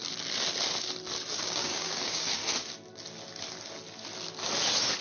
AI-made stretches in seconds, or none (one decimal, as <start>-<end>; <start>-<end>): 1.3-2.4